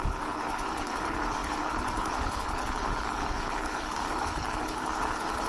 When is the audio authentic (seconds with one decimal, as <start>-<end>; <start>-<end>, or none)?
none